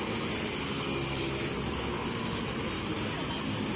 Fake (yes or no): no